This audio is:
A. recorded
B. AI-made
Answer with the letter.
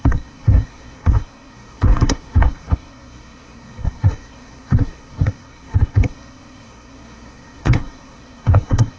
B